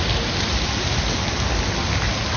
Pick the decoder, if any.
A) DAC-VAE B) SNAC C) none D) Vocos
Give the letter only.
C